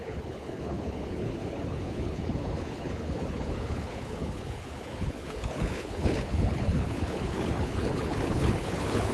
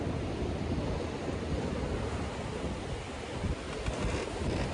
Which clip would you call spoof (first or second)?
first